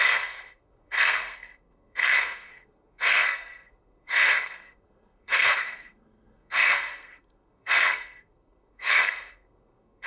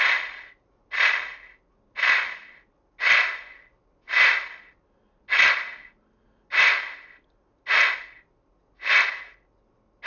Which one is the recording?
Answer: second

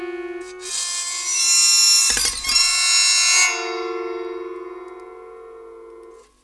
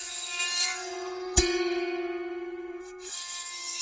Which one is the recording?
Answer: first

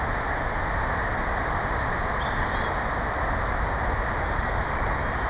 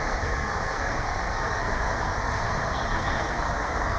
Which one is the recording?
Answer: first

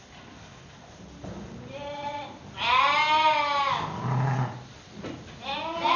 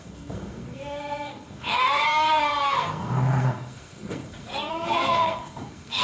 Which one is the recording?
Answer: first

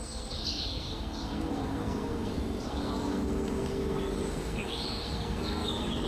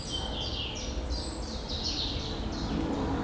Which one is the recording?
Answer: second